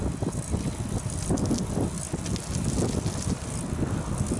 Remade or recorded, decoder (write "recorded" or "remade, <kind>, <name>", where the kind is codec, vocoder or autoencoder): recorded